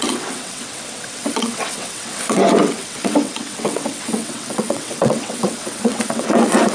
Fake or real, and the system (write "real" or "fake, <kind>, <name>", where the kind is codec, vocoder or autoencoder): fake, vocoder, WaveNeXt